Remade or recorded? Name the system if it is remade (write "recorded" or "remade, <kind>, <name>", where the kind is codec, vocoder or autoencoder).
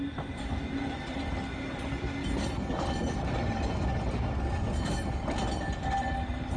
recorded